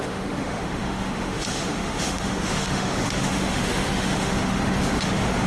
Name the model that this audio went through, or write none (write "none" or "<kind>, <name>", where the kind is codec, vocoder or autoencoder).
autoencoder, DAC-VAE